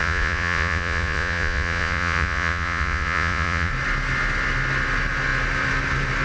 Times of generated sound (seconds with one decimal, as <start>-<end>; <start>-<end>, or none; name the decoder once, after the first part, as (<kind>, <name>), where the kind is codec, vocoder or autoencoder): 0.0-3.7 (vocoder, Vocos)